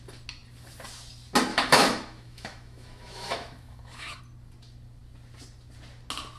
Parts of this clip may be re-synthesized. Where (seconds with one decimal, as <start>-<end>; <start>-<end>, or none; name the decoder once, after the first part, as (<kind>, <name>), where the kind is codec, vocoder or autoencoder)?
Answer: 1.5-4.2 (autoencoder, DAC-VAE)